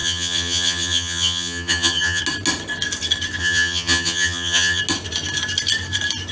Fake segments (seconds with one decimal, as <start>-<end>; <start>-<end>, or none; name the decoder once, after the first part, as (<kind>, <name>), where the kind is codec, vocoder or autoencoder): 0.0-2.2 (vocoder, HiFi-GAN); 3.4-4.8